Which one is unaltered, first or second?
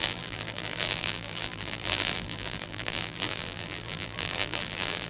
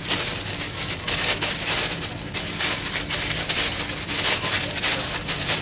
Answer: second